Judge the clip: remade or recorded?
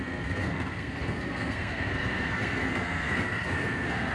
remade